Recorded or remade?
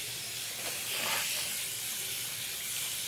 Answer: recorded